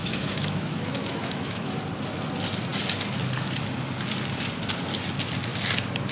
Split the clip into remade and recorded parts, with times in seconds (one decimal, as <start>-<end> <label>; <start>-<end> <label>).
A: 0.0-1.8 remade; 1.8-6.1 recorded